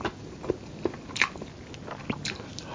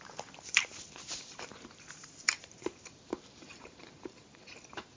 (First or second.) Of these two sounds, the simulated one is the second